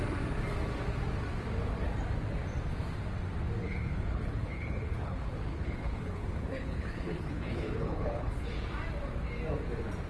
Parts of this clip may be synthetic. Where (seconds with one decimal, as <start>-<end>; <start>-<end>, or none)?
3.6-8.5